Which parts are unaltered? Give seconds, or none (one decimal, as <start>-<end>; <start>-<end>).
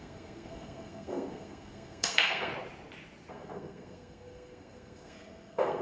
2.5-3.3